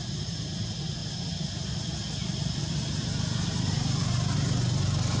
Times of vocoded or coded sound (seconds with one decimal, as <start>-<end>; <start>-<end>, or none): none